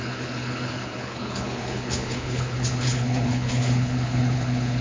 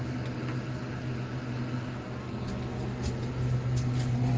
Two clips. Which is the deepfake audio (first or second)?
first